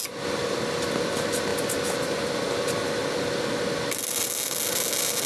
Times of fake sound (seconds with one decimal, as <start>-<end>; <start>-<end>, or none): none